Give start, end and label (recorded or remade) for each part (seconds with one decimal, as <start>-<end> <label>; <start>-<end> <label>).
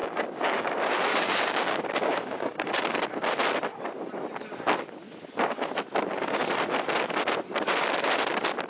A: 0.0-0.7 remade; 0.7-1.1 recorded; 1.1-2.7 remade; 2.7-8.7 recorded